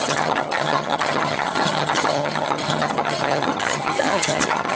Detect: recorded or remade remade